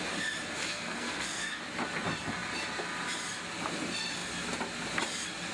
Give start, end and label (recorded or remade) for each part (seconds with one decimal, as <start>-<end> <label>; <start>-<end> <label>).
0.0-0.6 recorded; 0.6-1.6 remade; 1.6-5.5 recorded